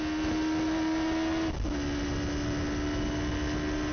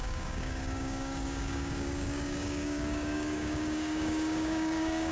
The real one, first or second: first